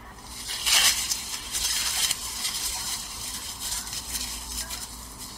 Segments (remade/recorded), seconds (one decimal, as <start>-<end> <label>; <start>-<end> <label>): 0.0-0.8 recorded; 0.8-4.0 remade; 4.0-5.4 recorded